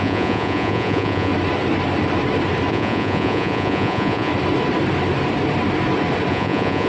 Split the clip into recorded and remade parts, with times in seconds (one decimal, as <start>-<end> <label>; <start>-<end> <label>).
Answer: 0.0-1.3 remade; 1.3-2.7 recorded; 2.7-4.3 remade; 4.3-6.3 recorded; 6.3-6.9 remade